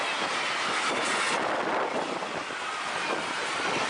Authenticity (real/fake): real